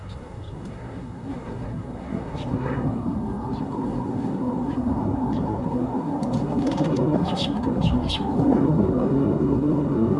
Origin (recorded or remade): remade